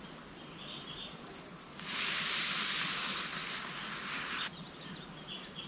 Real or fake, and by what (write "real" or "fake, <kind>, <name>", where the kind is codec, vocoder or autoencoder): real